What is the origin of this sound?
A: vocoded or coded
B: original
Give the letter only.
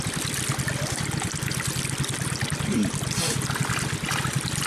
B